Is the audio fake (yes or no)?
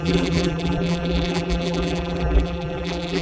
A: yes